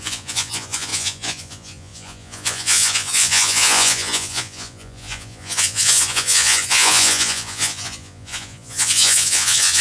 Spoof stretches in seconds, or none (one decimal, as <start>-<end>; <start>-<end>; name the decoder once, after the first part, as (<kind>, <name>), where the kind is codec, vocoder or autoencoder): 0.0-9.8 (vocoder, Vocos)